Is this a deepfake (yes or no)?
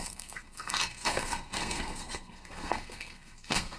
yes